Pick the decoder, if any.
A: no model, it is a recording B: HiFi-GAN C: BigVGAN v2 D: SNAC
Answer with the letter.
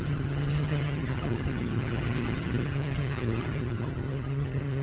B